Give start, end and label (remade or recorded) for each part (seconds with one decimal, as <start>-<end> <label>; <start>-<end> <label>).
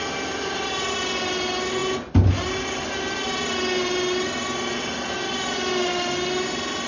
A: 0.0-6.9 recorded